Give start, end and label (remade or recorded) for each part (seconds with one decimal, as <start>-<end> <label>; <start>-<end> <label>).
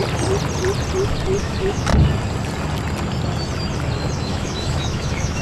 0.0-1.4 recorded; 1.4-1.9 remade; 1.9-4.2 recorded; 4.2-5.4 remade